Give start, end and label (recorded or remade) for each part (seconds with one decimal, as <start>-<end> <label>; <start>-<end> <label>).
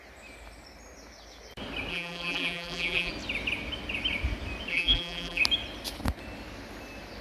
0.0-1.9 recorded; 1.9-3.1 remade; 3.1-4.7 recorded; 4.7-5.4 remade; 5.4-7.2 recorded